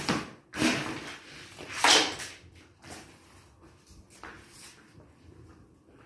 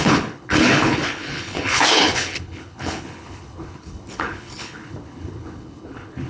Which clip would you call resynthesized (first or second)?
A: second